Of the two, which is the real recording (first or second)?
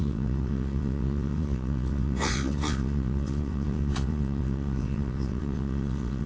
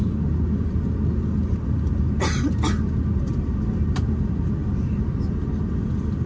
second